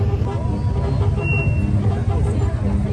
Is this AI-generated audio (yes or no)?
no